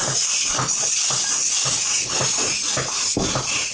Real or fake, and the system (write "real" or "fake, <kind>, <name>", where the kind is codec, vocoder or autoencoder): real